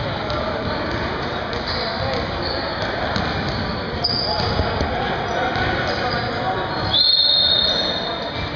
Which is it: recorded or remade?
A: recorded